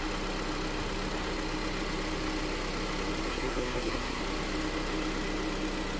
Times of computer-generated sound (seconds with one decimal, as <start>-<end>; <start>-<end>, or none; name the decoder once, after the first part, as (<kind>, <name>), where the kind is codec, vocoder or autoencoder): 3.3-4.2 (codec, SNAC)